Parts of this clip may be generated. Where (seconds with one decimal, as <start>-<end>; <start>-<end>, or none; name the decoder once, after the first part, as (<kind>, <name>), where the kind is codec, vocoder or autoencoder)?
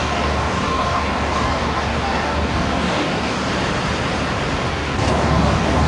0.0-3.5 (codec, DAC); 4.7-5.9